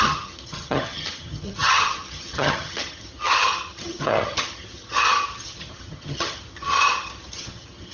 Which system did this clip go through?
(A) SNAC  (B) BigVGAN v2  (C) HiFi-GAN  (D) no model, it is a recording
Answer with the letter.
C